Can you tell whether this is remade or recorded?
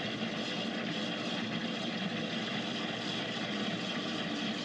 recorded